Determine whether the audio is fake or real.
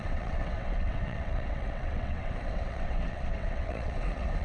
fake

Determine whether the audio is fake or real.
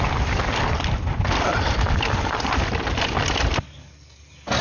real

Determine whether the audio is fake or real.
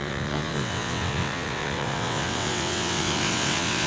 fake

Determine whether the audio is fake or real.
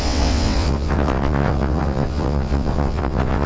fake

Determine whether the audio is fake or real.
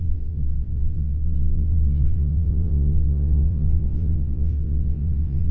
fake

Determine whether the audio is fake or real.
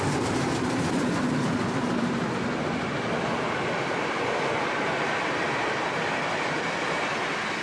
real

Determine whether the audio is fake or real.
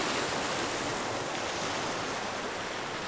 real